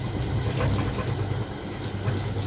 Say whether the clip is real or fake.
real